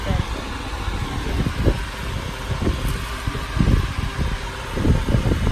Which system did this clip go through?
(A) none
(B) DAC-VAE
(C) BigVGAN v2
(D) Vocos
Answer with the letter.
A